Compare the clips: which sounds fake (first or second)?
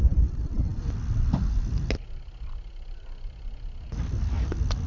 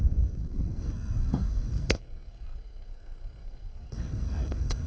second